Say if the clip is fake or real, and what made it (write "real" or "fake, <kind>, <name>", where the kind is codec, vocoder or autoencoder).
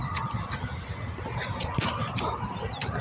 real